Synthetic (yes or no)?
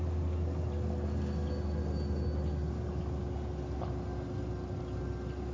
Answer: no